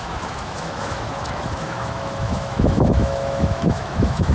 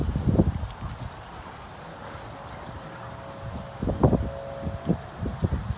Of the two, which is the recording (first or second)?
second